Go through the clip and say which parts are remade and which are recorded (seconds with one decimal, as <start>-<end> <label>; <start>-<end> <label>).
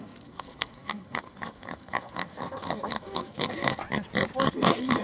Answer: 0.0-3.8 remade; 3.8-4.5 recorded; 4.5-5.0 remade